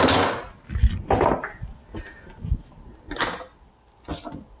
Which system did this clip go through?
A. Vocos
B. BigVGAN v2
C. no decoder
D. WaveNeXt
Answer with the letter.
C